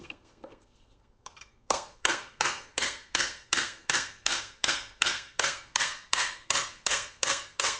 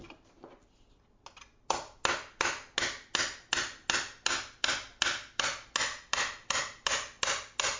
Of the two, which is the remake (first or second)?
first